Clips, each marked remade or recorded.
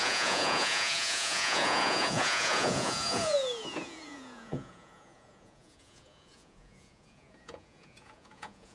remade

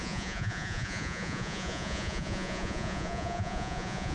remade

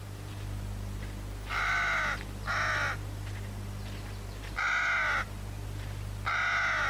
recorded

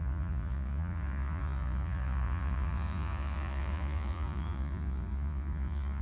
remade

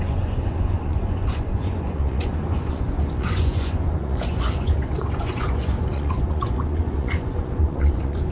remade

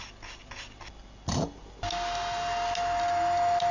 recorded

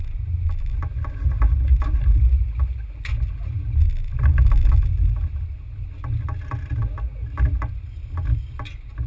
recorded